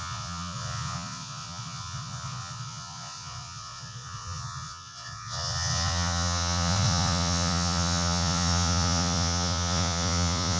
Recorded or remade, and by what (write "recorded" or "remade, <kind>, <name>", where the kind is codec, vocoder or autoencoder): remade, vocoder, Vocos